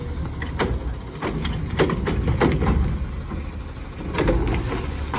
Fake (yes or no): no